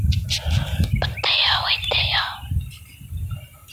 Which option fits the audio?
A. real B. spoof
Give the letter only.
A